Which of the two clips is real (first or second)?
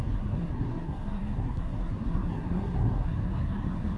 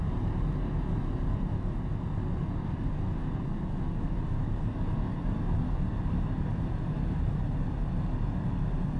second